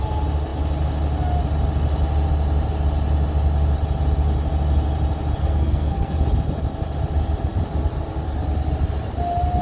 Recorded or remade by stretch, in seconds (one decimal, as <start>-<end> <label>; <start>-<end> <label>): 0.0-5.4 recorded; 5.4-6.2 remade; 6.2-9.6 recorded